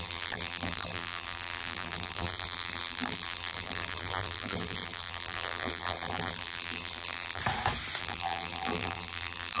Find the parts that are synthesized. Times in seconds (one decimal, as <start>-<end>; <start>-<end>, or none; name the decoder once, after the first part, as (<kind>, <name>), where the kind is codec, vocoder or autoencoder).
0.0-7.4 (vocoder, BigVGAN v2); 8.0-9.6